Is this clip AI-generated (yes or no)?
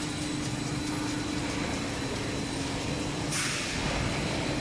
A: no